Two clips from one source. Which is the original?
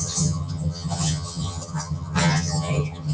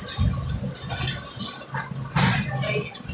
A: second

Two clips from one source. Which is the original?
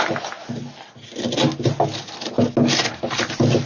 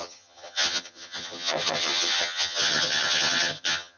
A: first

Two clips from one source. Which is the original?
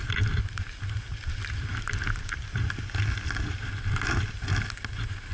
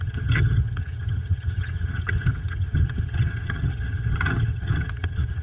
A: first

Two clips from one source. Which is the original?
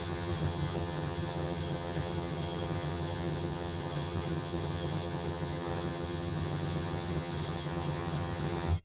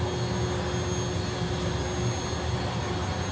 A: second